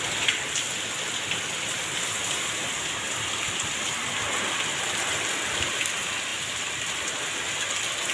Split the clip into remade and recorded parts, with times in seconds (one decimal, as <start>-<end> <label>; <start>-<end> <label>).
0.0-8.1 recorded